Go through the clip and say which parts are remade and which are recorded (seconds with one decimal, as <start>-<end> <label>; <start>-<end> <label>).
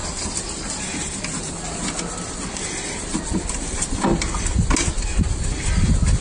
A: 0.0-6.2 recorded